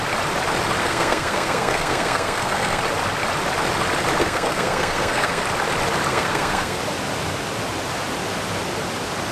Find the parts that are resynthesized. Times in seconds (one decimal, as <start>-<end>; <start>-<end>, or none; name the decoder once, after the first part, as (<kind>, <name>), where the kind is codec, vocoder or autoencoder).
0.8-2.8 (codec, SNAC); 4.2-5.4; 6.1-6.8